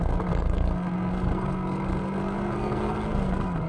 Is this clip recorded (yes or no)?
no